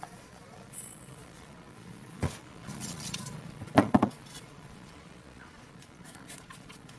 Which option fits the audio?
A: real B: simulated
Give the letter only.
B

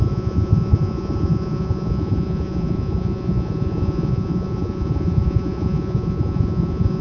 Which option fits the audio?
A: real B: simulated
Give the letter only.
B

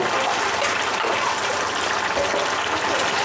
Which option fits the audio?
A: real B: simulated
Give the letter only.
A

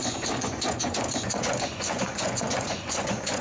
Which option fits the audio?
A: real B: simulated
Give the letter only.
B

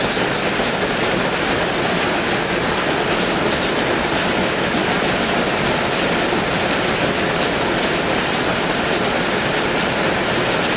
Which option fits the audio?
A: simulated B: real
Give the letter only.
B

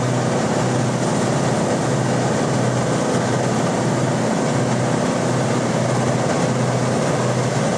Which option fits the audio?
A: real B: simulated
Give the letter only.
A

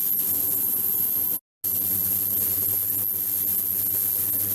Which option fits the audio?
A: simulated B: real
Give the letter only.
B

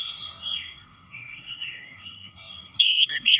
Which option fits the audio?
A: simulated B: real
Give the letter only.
A